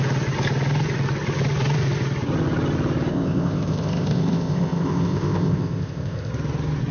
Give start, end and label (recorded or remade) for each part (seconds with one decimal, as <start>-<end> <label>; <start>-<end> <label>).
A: 0.0-3.1 recorded; 3.1-6.3 remade; 6.3-6.9 recorded